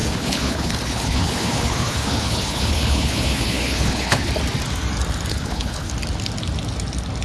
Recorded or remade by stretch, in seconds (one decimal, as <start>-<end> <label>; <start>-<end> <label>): 0.0-4.3 remade; 4.3-5.3 recorded; 5.3-5.9 remade; 5.9-7.2 recorded